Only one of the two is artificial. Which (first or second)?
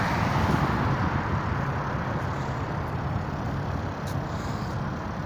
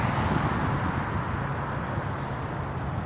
first